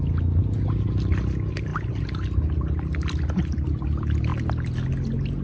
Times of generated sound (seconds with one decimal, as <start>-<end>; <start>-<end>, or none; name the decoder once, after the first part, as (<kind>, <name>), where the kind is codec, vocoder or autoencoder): none